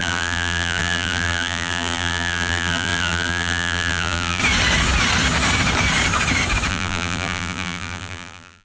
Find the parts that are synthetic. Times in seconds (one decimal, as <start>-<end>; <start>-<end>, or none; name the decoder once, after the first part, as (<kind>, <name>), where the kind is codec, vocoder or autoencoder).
0.0-4.4 (vocoder, BigVGAN v2); 6.7-8.6